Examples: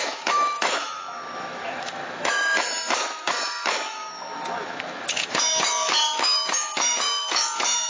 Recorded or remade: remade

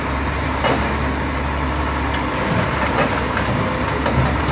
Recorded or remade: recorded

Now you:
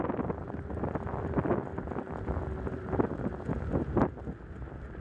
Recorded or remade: recorded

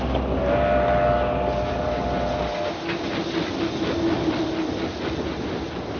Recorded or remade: recorded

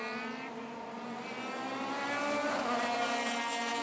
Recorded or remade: recorded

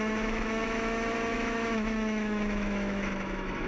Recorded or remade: remade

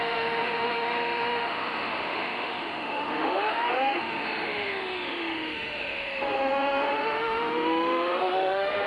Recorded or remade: remade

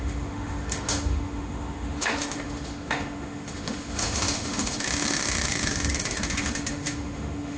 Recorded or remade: remade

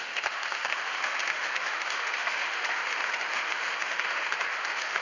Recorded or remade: remade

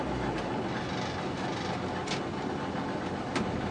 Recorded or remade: recorded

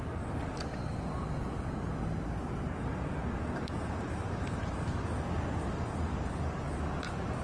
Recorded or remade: recorded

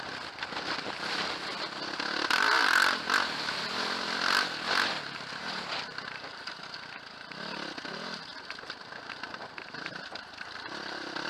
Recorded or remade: recorded